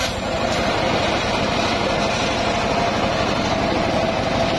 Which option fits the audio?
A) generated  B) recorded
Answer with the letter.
B